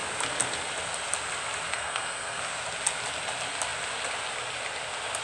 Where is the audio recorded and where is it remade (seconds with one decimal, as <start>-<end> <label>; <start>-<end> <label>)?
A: 0.0-1.7 recorded; 1.7-2.4 remade; 2.4-5.2 recorded

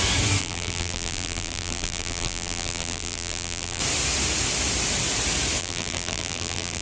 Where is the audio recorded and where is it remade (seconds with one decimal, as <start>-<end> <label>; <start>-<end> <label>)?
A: 0.0-0.4 recorded; 0.4-3.8 remade; 3.8-5.6 recorded; 5.6-6.8 remade

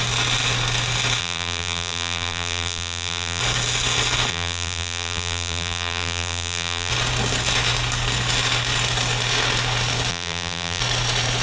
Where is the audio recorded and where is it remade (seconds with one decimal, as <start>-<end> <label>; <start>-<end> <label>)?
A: 0.0-1.2 recorded; 1.2-3.4 remade; 3.4-4.3 recorded; 4.3-6.9 remade; 6.9-10.1 recorded; 10.1-10.8 remade; 10.8-11.4 recorded